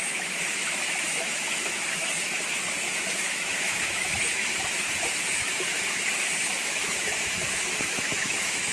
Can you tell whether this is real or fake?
fake